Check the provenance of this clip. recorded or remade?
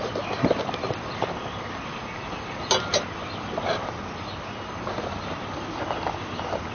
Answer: recorded